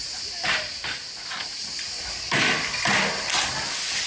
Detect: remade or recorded recorded